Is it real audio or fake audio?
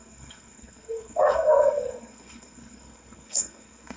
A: fake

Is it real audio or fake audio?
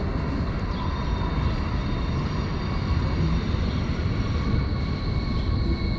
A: real